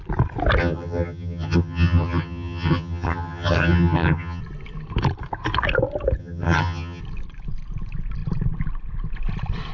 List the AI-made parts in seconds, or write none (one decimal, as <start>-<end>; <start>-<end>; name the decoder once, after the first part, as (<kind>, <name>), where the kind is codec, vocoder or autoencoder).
0.6-4.4 (vocoder, HiFi-GAN); 6.2-7.0